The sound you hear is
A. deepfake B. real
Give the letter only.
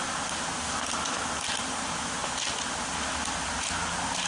B